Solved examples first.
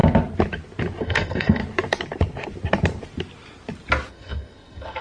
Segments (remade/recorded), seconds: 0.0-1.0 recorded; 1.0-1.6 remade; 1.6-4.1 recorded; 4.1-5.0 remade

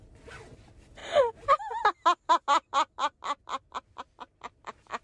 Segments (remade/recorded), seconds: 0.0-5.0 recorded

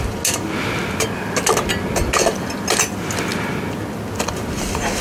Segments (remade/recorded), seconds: 0.0-5.0 recorded

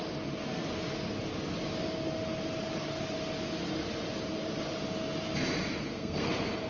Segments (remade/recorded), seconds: 0.0-5.8 recorded; 5.8-6.3 remade; 6.3-6.7 recorded

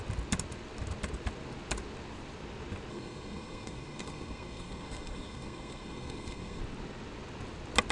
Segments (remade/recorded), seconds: 0.0-2.9 recorded; 2.9-6.6 remade; 6.6-7.9 recorded